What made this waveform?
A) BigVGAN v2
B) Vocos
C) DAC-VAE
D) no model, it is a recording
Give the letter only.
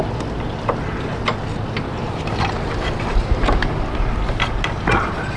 D